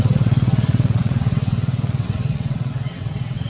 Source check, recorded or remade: remade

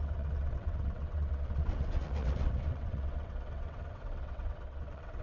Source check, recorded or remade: remade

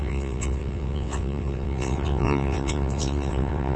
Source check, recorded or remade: remade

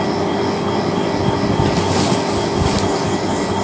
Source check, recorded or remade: recorded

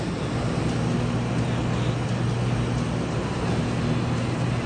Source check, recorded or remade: recorded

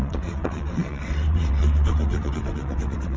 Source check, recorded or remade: remade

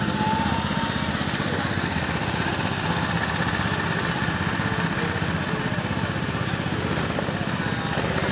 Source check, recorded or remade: recorded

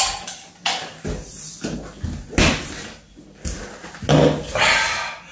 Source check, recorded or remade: recorded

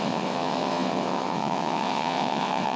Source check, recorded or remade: remade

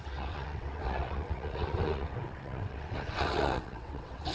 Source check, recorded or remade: remade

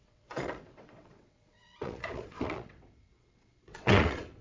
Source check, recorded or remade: remade